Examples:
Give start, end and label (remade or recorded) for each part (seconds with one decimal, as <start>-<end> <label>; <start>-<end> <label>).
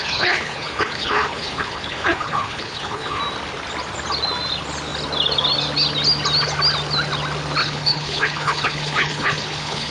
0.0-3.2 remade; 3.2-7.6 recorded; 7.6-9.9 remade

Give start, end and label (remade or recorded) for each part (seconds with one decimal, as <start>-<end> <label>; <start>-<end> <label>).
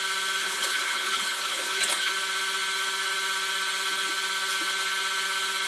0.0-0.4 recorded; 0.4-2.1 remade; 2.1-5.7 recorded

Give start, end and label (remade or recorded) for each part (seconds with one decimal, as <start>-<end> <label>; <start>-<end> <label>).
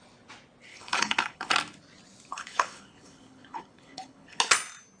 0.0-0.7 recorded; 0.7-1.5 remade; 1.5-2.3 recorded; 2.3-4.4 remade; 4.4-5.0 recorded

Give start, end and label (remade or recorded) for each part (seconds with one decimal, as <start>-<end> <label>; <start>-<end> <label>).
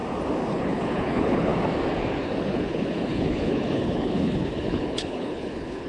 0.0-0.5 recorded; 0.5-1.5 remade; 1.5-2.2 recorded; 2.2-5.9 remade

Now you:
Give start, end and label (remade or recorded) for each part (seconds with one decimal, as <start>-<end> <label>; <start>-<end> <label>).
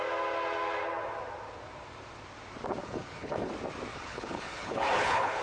0.0-2.8 recorded; 2.8-3.5 remade; 3.5-3.9 recorded; 3.9-5.4 remade